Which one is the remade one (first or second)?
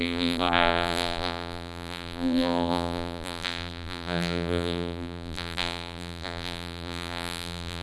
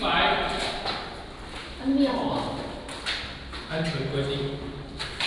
first